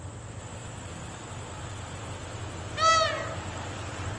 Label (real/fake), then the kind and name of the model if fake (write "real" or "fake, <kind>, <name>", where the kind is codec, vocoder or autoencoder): real